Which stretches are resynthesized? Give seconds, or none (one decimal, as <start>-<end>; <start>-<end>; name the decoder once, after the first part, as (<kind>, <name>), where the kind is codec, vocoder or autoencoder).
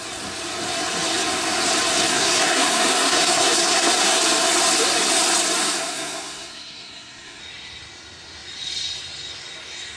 2.1-4.2 (codec, SNAC); 5.6-7.4